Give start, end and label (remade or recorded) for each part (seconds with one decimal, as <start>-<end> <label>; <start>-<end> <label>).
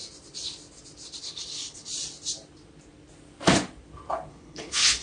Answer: 0.0-1.2 recorded; 1.2-1.9 remade; 1.9-4.3 recorded; 4.3-5.0 remade